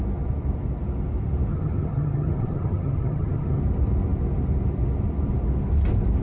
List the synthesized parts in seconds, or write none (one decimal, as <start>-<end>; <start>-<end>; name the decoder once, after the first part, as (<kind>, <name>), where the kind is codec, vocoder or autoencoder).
1.5-3.6 (vocoder, HiFi-GAN)